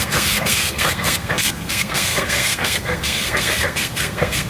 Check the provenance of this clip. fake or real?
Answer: fake